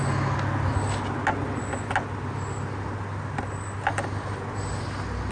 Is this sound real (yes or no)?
yes